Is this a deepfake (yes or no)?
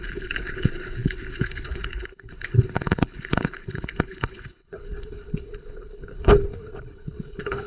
yes